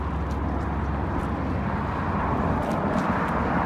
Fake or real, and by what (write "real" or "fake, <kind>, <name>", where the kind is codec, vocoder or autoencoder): real